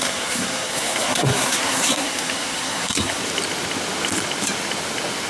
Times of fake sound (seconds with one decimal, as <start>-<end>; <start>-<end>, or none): 0.0-3.2